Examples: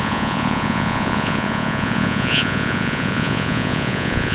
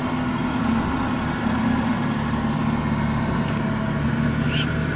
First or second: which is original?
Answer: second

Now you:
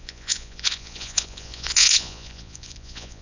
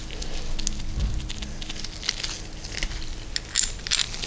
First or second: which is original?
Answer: second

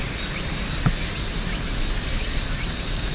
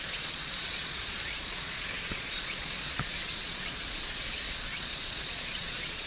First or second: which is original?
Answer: first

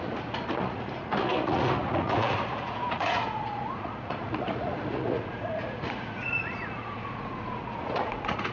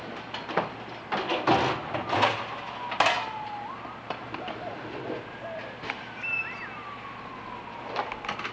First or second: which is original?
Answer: second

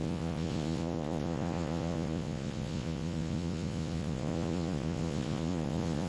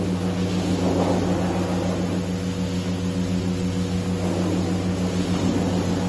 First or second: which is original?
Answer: second